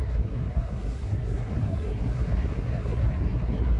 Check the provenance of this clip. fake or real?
fake